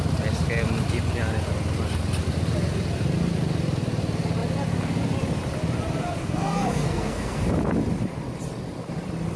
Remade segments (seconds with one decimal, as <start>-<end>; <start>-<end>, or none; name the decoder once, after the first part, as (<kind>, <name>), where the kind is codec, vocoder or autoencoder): 6.2-7.4 (codec, SNAC)